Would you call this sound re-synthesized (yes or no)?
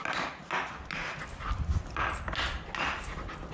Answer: no